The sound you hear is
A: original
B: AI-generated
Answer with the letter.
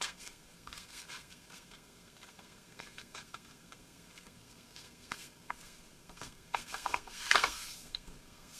B